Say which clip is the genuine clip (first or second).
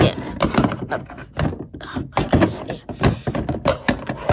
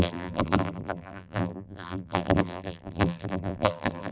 first